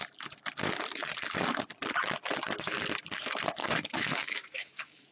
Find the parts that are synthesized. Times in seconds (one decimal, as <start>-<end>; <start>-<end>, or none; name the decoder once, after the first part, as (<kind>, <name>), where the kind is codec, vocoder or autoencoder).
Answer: 3.6-5.1 (autoencoder, DAC-VAE)